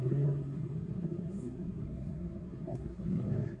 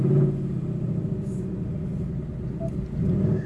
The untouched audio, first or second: second